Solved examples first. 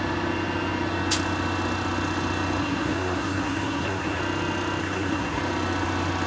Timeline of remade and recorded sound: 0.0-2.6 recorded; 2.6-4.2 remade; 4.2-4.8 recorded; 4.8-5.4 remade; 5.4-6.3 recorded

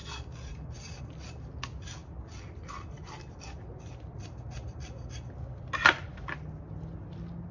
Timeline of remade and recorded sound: 0.0-7.5 recorded

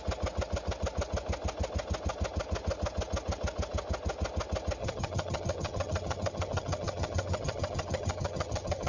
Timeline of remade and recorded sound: 0.0-4.8 recorded; 4.8-8.9 remade